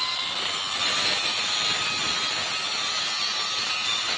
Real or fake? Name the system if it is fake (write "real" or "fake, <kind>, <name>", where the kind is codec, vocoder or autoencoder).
real